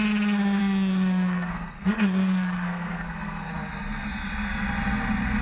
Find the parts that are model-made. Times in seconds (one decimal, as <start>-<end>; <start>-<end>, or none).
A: 0.6-3.5